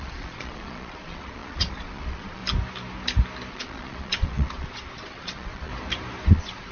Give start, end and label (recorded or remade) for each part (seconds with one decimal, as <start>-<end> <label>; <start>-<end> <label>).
0.0-2.4 remade; 2.4-3.5 recorded; 3.5-5.7 remade; 5.7-6.3 recorded; 6.3-6.7 remade